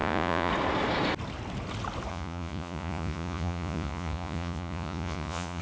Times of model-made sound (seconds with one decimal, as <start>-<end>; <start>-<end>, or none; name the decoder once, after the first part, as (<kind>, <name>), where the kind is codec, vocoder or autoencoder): 0.0-0.5 (vocoder, Vocos); 2.1-5.6